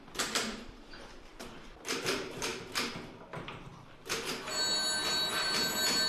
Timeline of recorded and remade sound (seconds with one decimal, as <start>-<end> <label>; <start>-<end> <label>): 0.0-2.5 remade; 2.5-3.1 recorded; 3.1-3.7 remade; 3.7-6.1 recorded